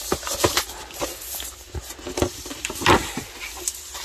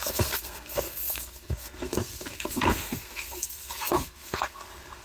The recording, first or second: first